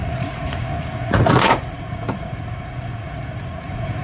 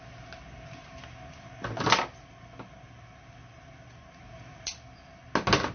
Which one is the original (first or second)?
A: second